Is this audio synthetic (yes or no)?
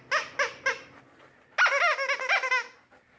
no